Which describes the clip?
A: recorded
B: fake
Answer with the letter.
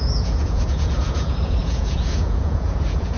B